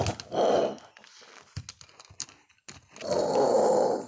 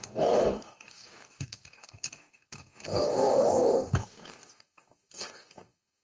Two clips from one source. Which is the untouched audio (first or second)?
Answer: first